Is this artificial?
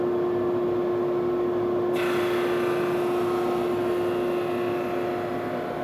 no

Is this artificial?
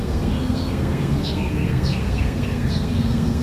yes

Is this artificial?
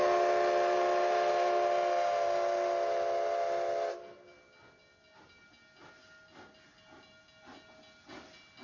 no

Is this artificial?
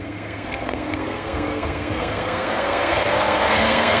yes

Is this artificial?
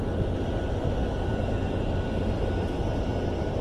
no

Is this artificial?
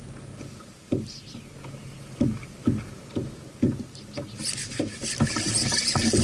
no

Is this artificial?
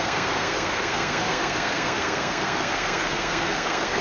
yes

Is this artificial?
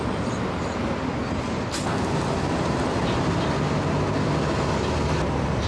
no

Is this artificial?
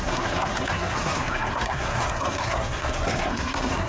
yes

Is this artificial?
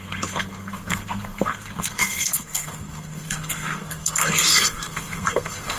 yes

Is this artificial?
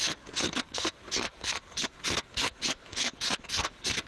yes